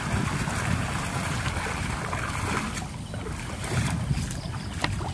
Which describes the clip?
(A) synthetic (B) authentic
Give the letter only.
B